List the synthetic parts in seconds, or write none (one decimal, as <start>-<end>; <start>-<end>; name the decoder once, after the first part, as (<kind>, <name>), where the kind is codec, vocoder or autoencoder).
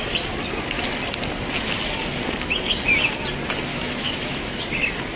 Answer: 3.7-4.6 (autoencoder, DAC-VAE)